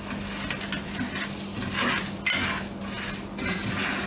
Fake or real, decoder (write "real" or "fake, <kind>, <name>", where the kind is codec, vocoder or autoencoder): real